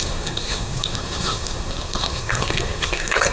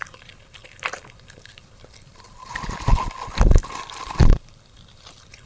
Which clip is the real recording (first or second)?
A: second